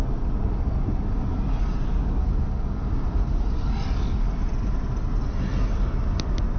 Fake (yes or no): no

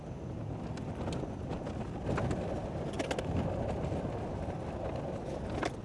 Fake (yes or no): no